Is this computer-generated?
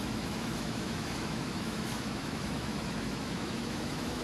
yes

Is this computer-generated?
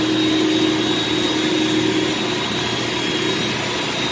no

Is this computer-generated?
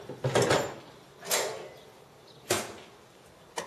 no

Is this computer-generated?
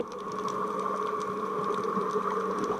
no